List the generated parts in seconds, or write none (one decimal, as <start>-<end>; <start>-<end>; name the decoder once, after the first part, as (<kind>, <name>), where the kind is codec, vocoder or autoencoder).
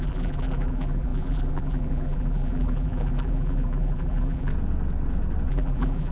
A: 0.0-4.5 (vocoder, BigVGAN v2); 5.5-6.1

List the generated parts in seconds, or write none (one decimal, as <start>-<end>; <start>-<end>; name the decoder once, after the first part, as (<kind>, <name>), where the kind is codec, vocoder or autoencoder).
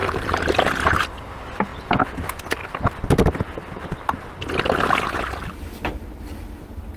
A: 0.0-0.6 (vocoder, BigVGAN v2)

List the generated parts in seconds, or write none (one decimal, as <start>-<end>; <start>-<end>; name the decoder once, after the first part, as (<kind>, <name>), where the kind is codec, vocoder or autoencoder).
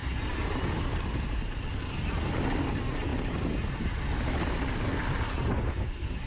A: none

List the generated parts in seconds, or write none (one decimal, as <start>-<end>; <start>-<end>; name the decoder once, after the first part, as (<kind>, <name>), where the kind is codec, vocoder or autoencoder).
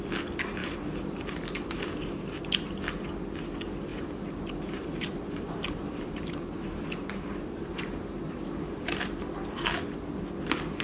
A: 0.6-2.4 (vocoder, BigVGAN v2); 3.9-8.9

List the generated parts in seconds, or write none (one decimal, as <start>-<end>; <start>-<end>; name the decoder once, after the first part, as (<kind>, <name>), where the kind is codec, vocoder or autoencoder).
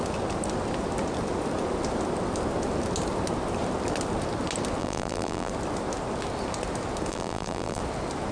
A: 4.8-5.5 (vocoder, BigVGAN v2); 7.1-7.8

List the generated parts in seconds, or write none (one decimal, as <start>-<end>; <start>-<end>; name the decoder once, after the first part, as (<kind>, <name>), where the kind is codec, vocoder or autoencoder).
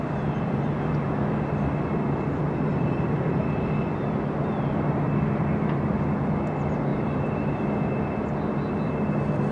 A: 6.9-7.6 (vocoder, BigVGAN v2)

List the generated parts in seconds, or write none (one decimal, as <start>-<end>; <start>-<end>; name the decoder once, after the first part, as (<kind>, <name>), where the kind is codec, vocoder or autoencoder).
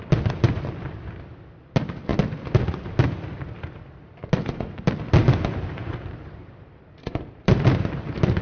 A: 5.8-7.5 (vocoder, BigVGAN v2)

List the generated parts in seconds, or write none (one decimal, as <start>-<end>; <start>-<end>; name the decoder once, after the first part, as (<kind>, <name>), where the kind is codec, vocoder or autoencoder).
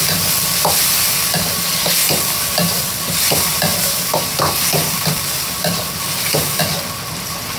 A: 3.7-6.6 (vocoder, BigVGAN v2)